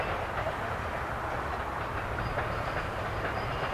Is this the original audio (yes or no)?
yes